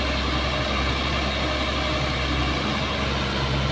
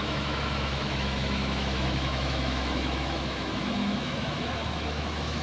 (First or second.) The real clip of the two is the first